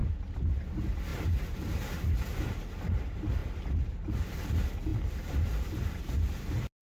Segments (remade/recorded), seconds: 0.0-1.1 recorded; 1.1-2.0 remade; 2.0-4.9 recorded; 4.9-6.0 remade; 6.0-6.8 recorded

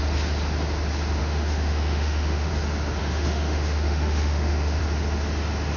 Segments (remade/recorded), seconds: 0.0-1.2 recorded; 1.2-2.5 remade; 2.5-3.0 recorded; 3.0-4.8 remade; 4.8-5.8 recorded

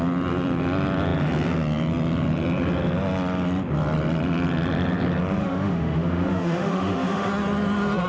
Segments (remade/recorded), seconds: 0.0-5.4 recorded; 5.4-7.3 remade; 7.3-8.1 recorded

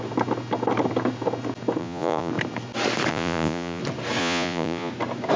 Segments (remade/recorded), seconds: 0.0-1.8 recorded; 1.8-2.3 remade; 2.3-3.1 recorded; 3.1-3.8 remade; 3.8-4.2 recorded; 4.2-4.9 remade; 4.9-5.4 recorded